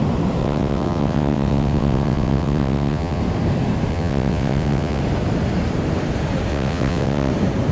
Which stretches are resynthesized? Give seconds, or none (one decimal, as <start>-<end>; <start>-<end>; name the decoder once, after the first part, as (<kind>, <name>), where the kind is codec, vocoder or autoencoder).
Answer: 0.4-3.2 (vocoder, WaveNeXt); 3.9-5.0; 6.5-7.3